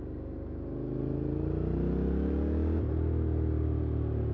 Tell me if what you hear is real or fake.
real